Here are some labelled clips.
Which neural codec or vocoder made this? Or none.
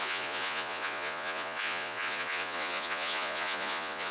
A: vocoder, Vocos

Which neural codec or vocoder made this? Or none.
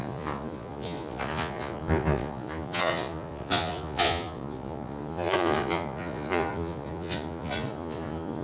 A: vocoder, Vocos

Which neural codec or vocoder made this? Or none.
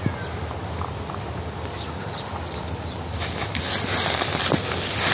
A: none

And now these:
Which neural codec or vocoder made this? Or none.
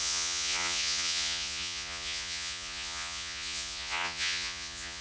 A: vocoder, Vocos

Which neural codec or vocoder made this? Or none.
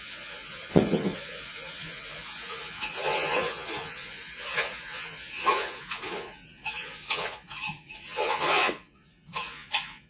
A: vocoder, Vocos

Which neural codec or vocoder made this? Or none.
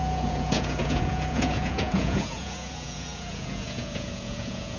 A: vocoder, Vocos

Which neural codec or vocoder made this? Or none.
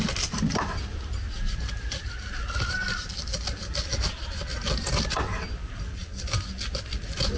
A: none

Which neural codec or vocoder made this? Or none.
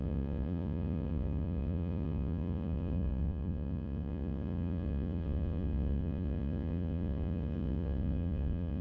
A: vocoder, Vocos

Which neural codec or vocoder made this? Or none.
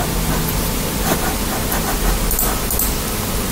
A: none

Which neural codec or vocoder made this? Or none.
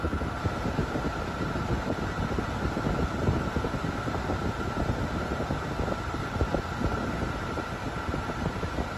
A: none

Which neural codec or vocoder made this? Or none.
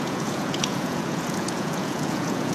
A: vocoder, Vocos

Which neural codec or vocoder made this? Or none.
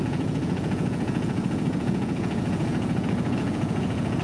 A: vocoder, Vocos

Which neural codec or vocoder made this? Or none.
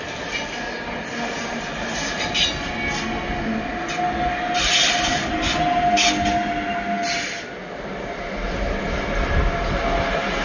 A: none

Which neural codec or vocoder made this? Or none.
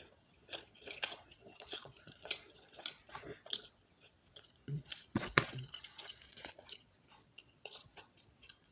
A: vocoder, Vocos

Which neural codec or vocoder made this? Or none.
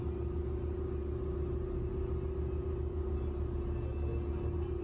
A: none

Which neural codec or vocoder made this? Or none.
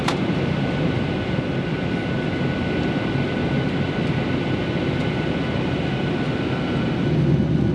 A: none